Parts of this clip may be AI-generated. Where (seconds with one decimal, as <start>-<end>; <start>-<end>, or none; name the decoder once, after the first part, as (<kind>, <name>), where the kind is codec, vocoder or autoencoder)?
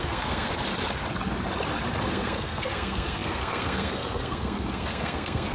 0.0-0.7 (codec, SNAC); 2.0-5.5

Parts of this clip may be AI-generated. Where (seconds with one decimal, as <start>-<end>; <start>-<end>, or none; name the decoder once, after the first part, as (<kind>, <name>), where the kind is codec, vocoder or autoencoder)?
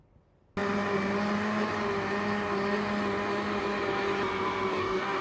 4.7-5.2 (codec, DAC)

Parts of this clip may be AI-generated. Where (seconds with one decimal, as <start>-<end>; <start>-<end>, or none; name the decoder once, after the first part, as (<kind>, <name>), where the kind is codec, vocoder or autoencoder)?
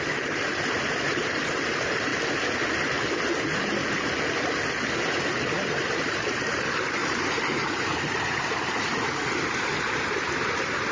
0.0-2.1 (vocoder, BigVGAN v2); 3.3-3.8; 4.9-10.9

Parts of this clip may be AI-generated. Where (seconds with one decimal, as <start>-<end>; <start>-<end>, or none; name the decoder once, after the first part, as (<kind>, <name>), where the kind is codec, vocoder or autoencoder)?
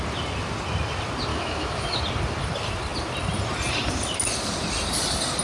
1.3-2.0 (autoencoder, DAC-VAE)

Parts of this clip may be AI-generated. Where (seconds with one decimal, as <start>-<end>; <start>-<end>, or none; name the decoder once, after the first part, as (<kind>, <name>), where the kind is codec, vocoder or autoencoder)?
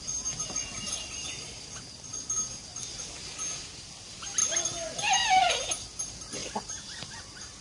4.4-5.6 (vocoder, BigVGAN v2); 6.4-7.6